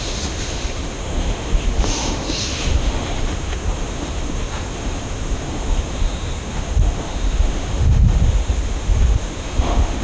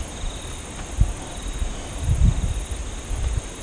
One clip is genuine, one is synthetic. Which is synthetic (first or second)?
first